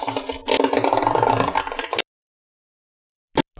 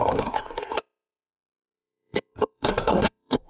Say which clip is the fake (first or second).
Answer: second